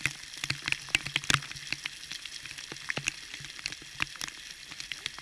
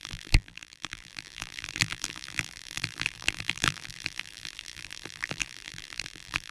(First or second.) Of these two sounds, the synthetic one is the second